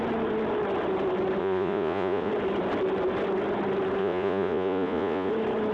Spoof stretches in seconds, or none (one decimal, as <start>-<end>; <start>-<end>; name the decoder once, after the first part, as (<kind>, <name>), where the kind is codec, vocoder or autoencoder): 1.4-2.3 (vocoder, Vocos); 4.0-5.3